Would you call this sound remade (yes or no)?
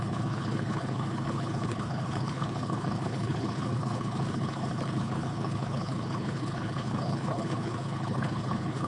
yes